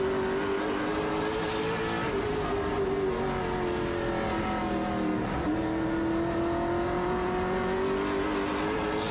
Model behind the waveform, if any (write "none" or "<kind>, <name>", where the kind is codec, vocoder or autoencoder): none